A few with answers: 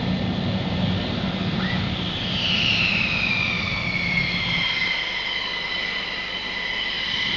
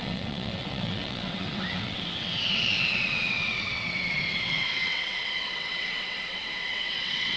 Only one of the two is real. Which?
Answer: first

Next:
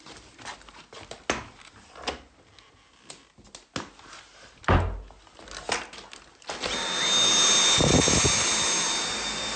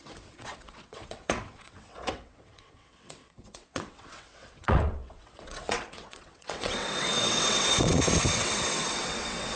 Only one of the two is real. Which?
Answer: first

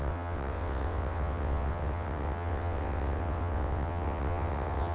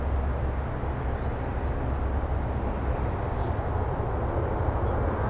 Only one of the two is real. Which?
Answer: second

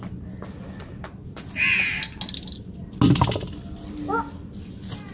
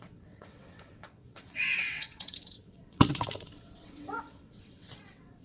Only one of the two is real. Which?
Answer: first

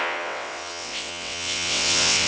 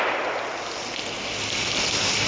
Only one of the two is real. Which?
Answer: second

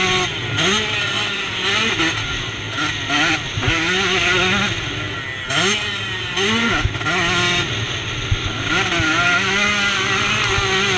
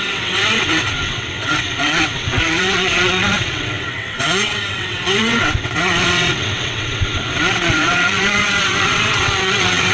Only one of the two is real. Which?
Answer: first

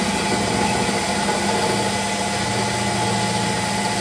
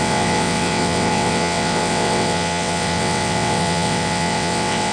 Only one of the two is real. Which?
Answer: first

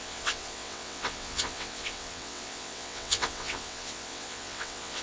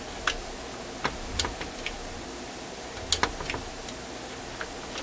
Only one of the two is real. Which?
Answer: second